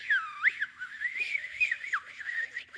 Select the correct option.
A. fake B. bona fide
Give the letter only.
B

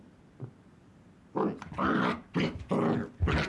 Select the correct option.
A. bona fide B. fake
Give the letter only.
A